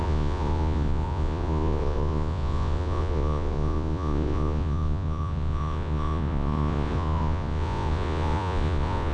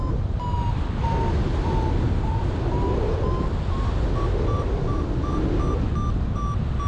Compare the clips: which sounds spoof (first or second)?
first